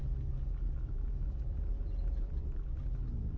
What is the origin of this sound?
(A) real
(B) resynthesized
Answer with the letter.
A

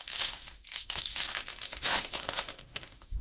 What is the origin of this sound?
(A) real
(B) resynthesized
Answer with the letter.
B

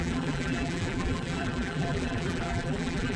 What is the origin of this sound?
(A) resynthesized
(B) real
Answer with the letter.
A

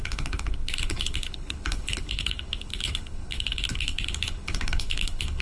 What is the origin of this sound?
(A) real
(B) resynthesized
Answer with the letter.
B